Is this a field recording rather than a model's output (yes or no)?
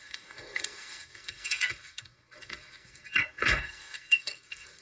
no